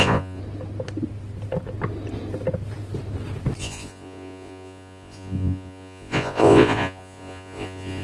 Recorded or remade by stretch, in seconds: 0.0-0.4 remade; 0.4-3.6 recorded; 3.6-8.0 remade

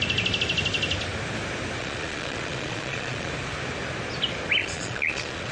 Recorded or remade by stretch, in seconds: 0.0-1.8 recorded; 1.8-3.3 remade; 3.3-4.6 recorded; 4.6-5.5 remade

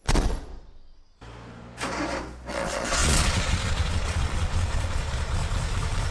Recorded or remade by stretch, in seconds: 0.0-0.5 remade; 0.5-2.5 recorded; 2.5-5.4 remade; 5.4-6.1 recorded

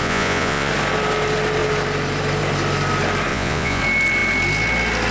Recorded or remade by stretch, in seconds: 0.0-0.7 remade; 0.7-3.3 recorded; 3.3-3.8 remade; 3.8-5.1 recorded

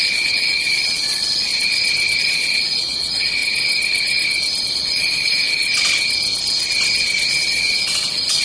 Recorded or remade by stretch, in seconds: 0.0-1.5 remade; 1.5-2.2 recorded; 2.2-3.4 remade; 3.4-4.7 recorded; 4.7-5.6 remade; 5.6-7.3 recorded; 7.3-8.4 remade

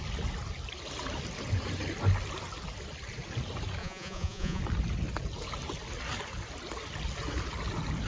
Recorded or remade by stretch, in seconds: 0.0-3.8 recorded; 3.8-4.6 remade; 4.6-8.1 recorded

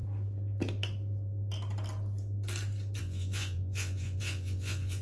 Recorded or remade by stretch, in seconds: 0.0-3.0 recorded; 3.0-5.0 remade